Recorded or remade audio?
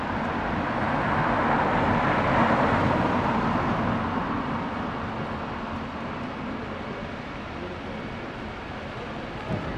recorded